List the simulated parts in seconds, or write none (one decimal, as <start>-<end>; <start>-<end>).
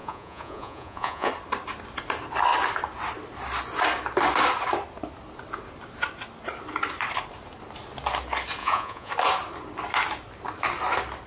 0.0-1.3; 8.6-9.1